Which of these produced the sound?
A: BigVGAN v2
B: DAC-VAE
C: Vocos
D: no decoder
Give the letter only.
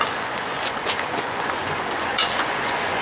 C